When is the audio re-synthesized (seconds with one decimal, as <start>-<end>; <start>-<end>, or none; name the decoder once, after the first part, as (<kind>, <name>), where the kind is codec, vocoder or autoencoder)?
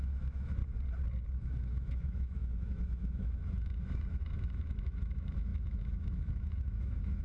0.0-0.6 (autoencoder, DAC-VAE); 1.3-7.2